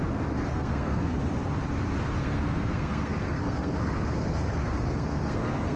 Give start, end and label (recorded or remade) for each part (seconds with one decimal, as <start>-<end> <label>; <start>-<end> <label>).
0.0-0.5 recorded; 0.5-1.2 remade; 1.2-2.2 recorded; 2.2-5.8 remade

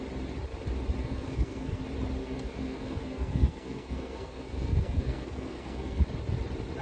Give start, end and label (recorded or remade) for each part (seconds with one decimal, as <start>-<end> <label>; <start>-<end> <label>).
0.0-1.0 recorded; 1.0-1.8 remade; 1.8-2.2 recorded; 2.2-6.0 remade; 6.0-6.8 recorded

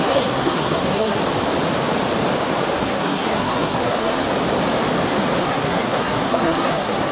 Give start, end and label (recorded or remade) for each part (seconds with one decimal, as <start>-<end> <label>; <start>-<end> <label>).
0.0-1.2 remade; 1.2-2.8 recorded; 2.8-4.2 remade; 4.2-5.4 recorded; 5.4-7.1 remade

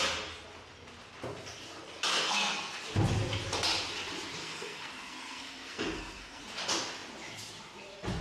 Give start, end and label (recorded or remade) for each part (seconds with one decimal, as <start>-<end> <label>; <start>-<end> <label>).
0.0-2.1 recorded; 2.1-2.7 remade; 2.7-4.4 recorded; 4.4-6.4 remade; 6.4-8.2 recorded